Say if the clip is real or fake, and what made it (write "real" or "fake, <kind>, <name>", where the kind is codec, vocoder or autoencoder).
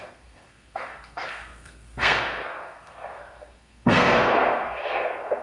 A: fake, codec, SNAC